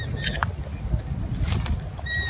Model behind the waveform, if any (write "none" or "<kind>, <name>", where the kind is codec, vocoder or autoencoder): none